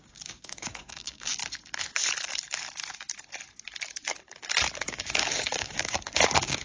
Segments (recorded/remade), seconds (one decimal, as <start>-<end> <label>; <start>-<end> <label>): 0.0-1.4 remade; 1.4-4.8 recorded; 4.8-6.6 remade